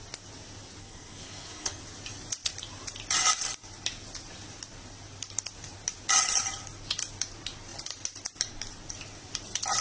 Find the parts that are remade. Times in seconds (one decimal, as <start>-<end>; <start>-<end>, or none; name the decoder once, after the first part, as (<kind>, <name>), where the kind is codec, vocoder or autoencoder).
0.8-1.8 (codec, SNAC)